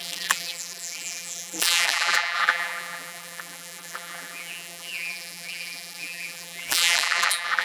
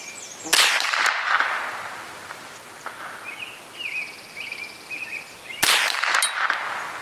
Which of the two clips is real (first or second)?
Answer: second